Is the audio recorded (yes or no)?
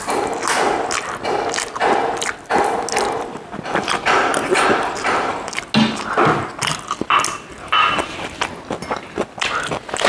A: yes